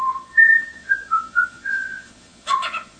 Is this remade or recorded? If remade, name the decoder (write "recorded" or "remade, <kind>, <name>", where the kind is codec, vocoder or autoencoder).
remade, vocoder, Vocos